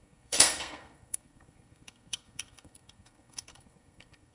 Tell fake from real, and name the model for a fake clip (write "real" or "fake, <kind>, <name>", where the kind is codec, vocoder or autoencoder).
fake, codec, SNAC